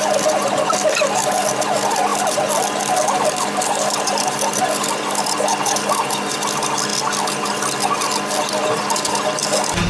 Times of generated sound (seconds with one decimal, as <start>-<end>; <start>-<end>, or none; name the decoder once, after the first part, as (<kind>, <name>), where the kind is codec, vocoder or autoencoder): 2.1-4.6 (vocoder, BigVGAN v2)